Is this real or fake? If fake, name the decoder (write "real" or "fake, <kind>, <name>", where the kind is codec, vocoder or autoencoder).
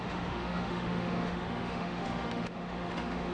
fake, autoencoder, DAC-VAE